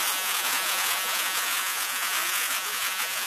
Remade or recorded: remade